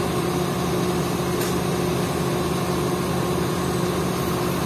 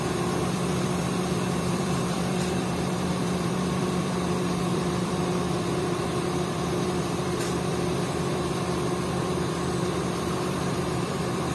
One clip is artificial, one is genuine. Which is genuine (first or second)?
first